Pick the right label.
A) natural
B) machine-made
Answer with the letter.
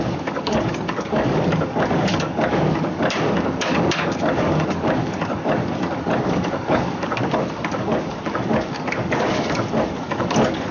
B